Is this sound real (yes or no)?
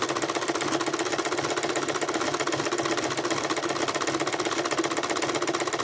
yes